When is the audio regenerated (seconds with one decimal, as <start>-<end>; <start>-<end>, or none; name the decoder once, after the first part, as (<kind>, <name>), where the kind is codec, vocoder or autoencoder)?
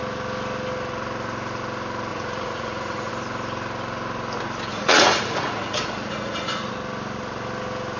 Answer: 2.1-3.1 (vocoder, Vocos); 4.7-6.7